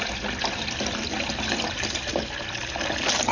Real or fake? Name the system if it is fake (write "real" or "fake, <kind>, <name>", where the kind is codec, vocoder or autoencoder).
real